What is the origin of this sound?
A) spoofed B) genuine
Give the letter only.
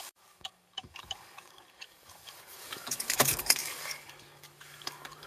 A